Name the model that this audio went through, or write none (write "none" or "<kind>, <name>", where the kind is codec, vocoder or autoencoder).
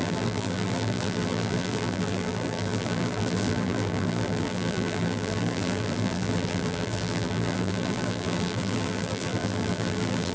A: vocoder, BigVGAN v2